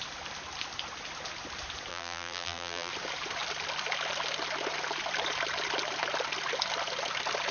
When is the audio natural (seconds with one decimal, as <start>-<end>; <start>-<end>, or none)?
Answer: 0.0-1.9; 2.9-7.5